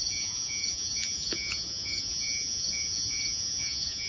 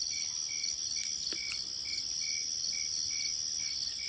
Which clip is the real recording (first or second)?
second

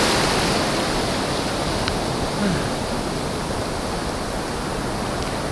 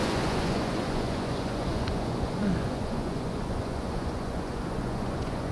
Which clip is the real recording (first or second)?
first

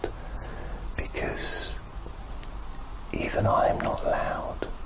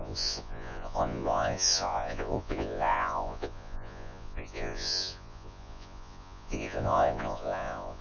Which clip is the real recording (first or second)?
first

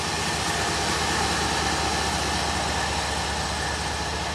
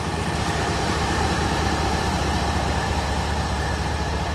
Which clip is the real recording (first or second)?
first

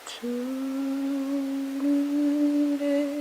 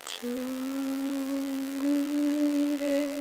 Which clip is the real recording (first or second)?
first